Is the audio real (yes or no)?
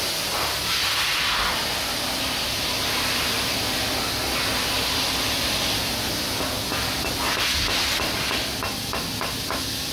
yes